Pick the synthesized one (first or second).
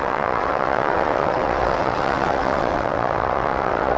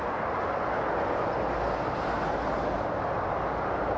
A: first